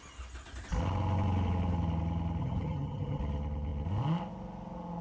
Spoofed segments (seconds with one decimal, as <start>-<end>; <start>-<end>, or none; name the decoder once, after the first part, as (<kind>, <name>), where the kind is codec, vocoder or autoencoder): 2.4-3.2 (vocoder, HiFi-GAN)